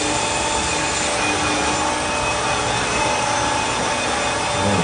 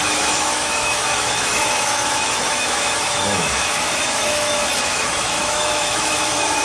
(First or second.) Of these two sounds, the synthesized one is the second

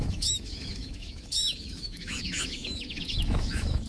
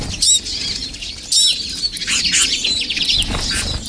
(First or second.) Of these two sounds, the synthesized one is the first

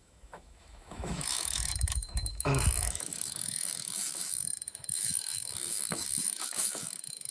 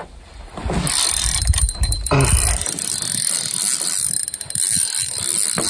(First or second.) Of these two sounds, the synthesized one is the first